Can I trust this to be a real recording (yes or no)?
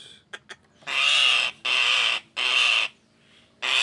yes